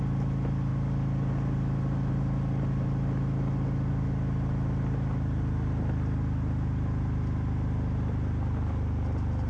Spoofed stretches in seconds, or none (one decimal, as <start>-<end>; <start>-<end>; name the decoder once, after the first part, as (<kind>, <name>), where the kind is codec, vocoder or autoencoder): none